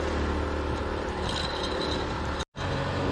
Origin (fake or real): real